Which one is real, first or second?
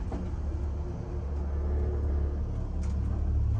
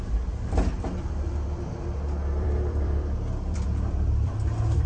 first